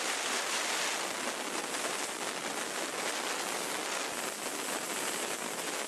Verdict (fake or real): real